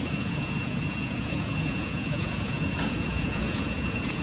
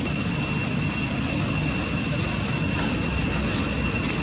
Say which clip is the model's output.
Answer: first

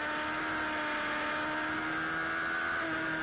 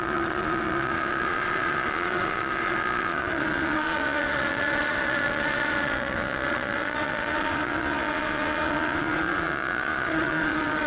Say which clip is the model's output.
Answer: second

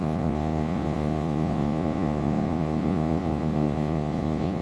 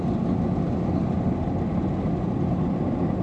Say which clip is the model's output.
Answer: first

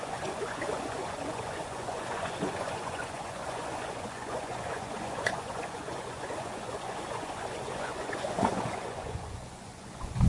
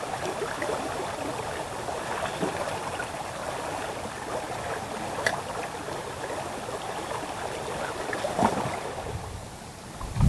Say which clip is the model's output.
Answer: first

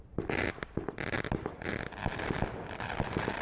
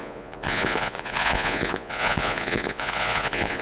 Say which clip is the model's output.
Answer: second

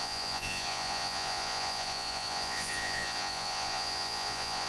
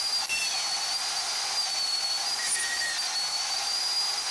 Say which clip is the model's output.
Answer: first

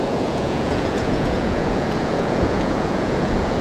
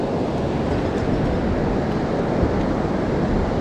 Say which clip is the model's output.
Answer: first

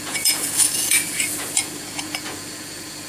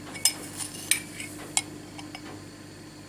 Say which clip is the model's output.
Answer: first